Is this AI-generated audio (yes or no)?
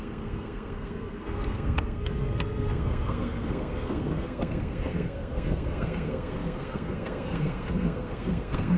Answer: yes